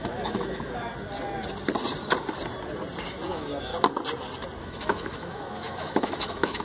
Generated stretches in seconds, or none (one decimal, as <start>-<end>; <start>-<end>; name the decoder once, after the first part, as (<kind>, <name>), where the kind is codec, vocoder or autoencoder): 0.0-0.9 (autoencoder, DAC-VAE); 3.3-3.7; 4.6-6.6

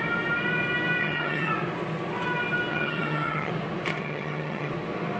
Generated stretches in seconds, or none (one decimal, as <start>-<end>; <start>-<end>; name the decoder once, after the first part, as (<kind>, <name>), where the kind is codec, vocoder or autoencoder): 1.0-1.5 (vocoder, HiFi-GAN); 2.7-3.5; 3.9-4.7

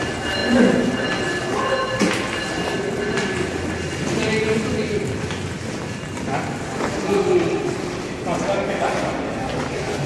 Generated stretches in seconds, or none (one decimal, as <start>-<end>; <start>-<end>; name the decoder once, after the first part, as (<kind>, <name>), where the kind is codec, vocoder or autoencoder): 4.8-7.8 (vocoder, BigVGAN v2)

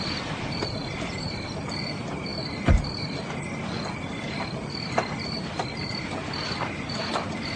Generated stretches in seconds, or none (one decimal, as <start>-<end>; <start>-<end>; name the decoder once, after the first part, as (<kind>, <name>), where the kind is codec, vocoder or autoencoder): none

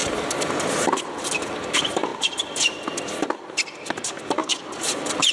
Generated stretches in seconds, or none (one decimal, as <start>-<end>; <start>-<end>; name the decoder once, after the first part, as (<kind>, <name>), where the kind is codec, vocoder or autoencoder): 0.9-5.3 (vocoder, BigVGAN v2)

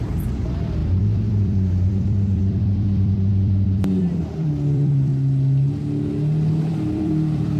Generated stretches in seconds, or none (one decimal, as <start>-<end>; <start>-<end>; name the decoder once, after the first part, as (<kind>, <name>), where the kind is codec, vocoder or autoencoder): 0.0-5.1 (vocoder, BigVGAN v2); 6.6-7.6

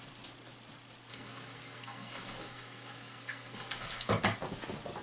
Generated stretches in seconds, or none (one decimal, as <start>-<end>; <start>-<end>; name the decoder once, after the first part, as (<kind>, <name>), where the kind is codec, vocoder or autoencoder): 1.1-4.1 (codec, SNAC)

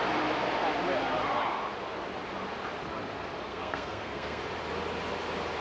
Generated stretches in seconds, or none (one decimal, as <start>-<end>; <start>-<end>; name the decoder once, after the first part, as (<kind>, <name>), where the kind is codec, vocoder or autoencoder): 3.5-4.4 (codec, SNAC)